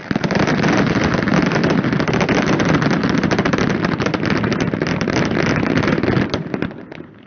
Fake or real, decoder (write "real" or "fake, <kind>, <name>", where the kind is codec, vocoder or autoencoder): fake, vocoder, BigVGAN v2